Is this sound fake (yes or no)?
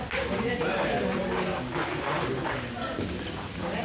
no